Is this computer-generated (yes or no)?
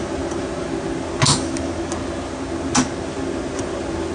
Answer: no